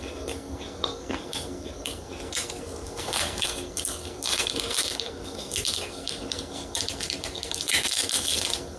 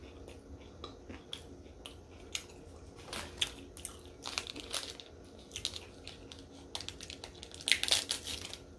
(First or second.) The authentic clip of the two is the second